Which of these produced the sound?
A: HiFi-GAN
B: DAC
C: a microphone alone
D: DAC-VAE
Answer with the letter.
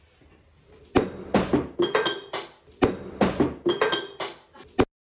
C